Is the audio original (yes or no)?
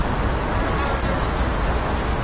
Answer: yes